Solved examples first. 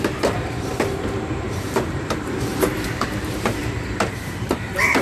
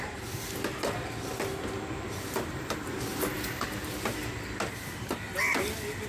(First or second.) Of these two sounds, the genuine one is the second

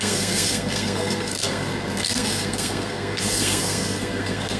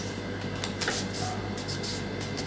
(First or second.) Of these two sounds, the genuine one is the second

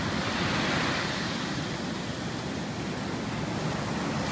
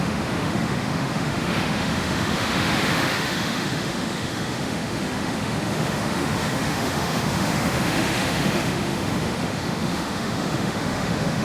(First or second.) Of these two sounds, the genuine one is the first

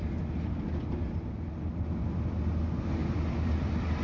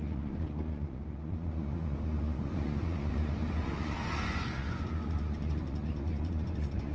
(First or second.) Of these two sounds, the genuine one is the first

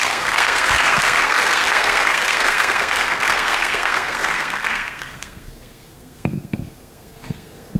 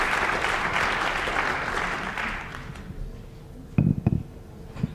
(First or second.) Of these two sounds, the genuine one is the second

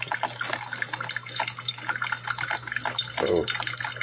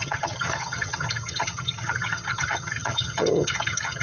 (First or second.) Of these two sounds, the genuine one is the first